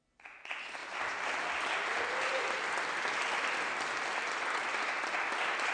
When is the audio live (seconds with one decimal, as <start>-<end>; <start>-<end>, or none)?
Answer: 0.0-5.7